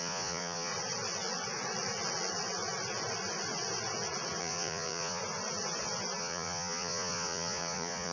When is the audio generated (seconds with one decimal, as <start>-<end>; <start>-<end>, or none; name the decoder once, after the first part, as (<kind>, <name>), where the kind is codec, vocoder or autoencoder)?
0.0-0.7 (vocoder, Vocos); 4.4-5.2; 6.2-8.1